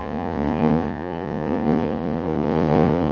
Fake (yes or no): yes